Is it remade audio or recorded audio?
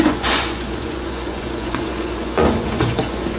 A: remade